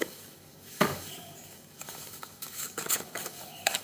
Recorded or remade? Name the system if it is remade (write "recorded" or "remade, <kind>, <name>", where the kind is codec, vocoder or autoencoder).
remade, codec, DAC